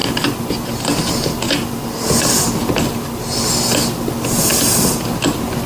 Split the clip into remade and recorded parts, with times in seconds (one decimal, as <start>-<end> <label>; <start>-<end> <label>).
0.0-5.7 recorded